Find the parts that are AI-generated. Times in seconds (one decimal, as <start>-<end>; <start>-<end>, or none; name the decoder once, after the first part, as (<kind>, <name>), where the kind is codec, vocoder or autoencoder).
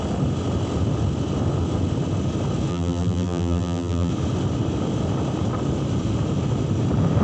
2.7-4.1 (vocoder, BigVGAN v2)